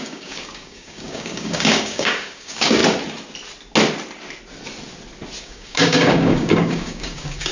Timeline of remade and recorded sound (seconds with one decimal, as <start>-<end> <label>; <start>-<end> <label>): 0.0-2.8 remade; 2.8-5.4 recorded; 5.4-7.5 remade